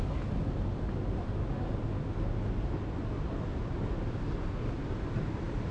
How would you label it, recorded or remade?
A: recorded